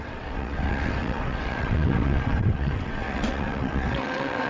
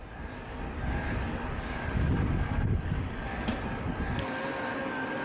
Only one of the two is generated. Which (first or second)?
first